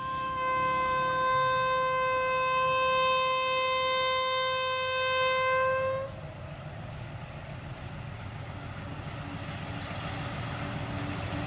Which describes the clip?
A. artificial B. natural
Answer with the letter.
B